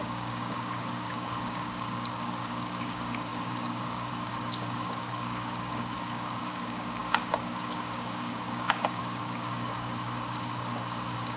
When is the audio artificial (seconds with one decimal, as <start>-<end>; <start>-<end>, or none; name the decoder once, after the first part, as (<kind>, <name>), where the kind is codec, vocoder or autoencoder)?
0.0-11.4 (codec, DAC)